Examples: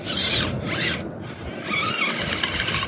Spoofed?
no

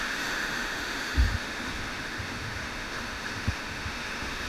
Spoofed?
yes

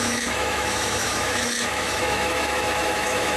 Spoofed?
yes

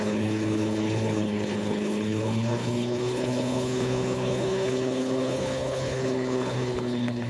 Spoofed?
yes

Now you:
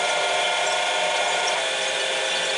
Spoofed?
no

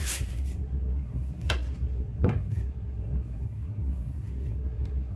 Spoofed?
yes